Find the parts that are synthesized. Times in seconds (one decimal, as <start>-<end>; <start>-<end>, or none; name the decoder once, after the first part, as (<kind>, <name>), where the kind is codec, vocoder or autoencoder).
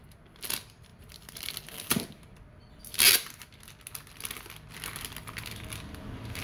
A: none